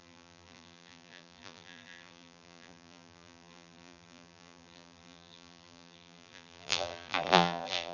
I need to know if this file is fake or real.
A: fake